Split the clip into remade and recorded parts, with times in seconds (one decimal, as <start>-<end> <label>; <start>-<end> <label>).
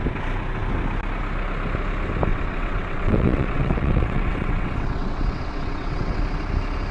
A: 0.0-2.3 recorded; 2.3-6.2 remade; 6.2-6.9 recorded